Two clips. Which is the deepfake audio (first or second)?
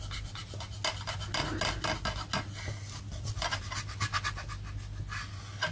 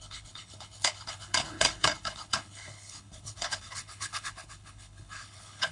second